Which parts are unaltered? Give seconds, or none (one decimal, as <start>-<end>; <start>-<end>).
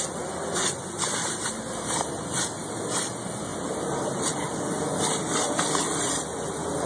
0.0-6.9